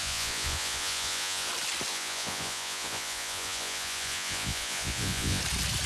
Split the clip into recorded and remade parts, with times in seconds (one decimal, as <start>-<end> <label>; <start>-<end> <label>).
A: 0.0-1.5 remade; 1.5-1.9 recorded; 1.9-5.4 remade; 5.4-5.9 recorded